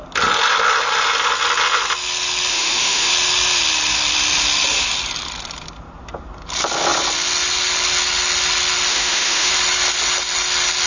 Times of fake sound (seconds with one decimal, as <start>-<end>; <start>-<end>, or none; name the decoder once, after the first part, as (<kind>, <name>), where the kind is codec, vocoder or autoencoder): 2.5-3.1 (autoencoder, DAC-VAE); 8.9-9.5

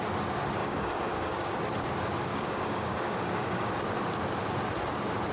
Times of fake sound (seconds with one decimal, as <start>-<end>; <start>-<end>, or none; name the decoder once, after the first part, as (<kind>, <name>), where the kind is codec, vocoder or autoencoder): 0.6-1.5 (codec, DAC); 2.3-3.7